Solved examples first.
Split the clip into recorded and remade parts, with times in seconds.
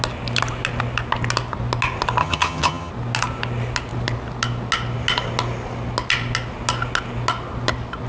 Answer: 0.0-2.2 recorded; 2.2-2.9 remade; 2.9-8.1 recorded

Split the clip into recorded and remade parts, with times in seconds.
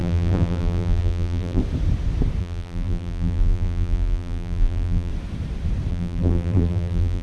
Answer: 0.0-1.6 remade; 1.6-2.4 recorded; 2.4-5.1 remade; 5.1-5.9 recorded; 5.9-7.2 remade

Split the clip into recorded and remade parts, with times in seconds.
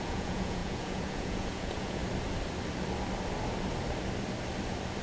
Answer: 0.0-2.0 remade; 2.0-5.0 recorded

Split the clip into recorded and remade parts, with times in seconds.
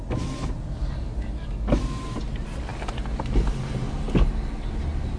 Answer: 0.0-0.8 recorded; 0.8-1.8 remade; 1.8-5.2 recorded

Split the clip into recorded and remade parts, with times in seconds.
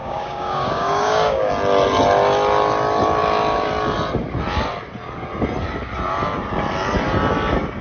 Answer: 0.0-1.5 remade; 1.5-7.8 recorded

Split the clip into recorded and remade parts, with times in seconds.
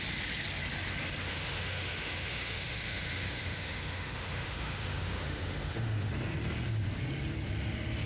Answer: 0.0-1.2 recorded; 1.2-6.1 remade; 6.1-8.1 recorded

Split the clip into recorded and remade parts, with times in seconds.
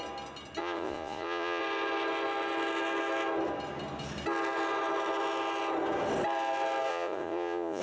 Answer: 0.0-0.6 recorded; 0.6-1.6 remade; 1.6-6.9 recorded; 6.9-7.8 remade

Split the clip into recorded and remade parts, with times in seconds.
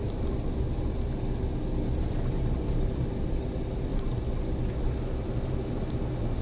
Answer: 0.0-6.4 recorded